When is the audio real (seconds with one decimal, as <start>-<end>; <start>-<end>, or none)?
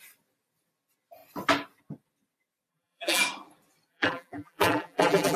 0.0-2.7; 3.2-3.9